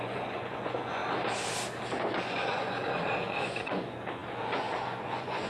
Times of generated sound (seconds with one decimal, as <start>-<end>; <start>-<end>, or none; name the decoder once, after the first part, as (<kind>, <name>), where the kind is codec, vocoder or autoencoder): 0.0-1.0 (vocoder, Vocos); 2.2-5.5